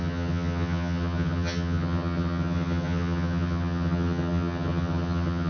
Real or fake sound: fake